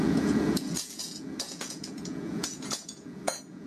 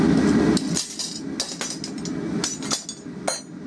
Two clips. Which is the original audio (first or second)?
second